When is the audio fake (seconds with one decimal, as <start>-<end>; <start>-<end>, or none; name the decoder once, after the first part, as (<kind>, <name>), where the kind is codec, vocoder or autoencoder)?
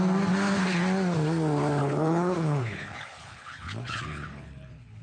1.8-5.0 (codec, HILCodec)